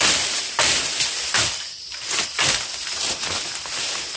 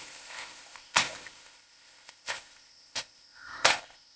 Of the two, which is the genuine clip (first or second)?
first